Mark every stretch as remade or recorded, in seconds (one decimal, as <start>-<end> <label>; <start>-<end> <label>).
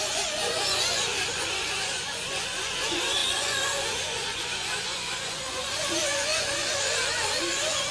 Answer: 0.0-7.9 remade